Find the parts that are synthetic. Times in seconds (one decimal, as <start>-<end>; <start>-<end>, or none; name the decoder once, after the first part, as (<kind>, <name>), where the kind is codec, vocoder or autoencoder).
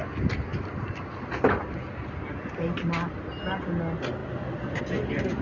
none